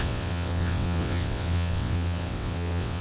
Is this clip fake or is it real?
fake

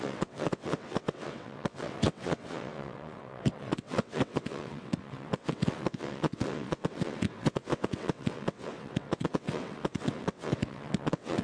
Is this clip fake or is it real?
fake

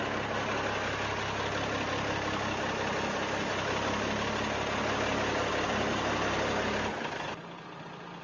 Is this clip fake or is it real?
real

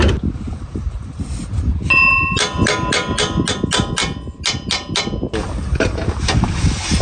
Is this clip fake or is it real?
real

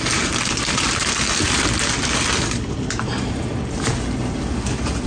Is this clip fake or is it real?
real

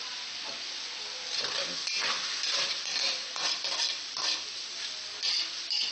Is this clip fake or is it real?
real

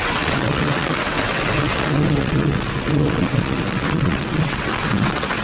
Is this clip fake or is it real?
fake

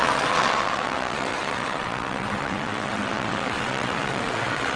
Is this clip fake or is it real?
fake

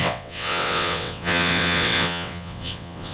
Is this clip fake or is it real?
fake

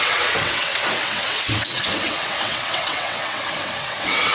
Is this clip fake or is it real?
fake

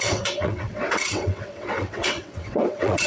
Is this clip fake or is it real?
fake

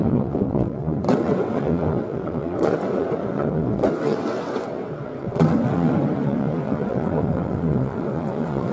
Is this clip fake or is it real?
fake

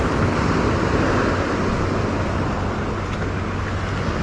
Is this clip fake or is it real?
real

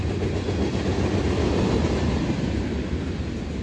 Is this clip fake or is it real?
real